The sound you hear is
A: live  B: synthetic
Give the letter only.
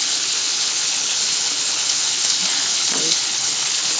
B